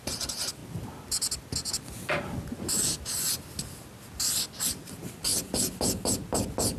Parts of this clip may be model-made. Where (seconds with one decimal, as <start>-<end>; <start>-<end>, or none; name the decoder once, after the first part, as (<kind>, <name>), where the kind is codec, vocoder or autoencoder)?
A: 0.0-0.6 (vocoder, BigVGAN v2); 4.7-5.3